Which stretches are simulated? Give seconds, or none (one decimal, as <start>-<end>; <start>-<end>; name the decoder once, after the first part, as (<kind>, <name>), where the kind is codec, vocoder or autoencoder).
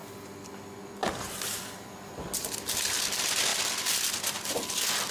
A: 0.0-0.5 (vocoder, BigVGAN v2); 1.0-2.7; 3.5-4.2